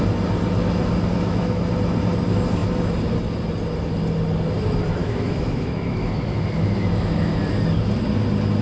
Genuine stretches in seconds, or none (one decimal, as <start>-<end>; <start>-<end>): 0.0-1.1; 1.6-5.0; 7.4-8.6